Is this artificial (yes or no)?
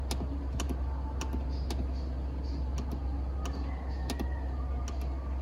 no